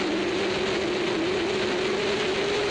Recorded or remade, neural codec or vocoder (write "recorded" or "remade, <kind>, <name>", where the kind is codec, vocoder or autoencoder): recorded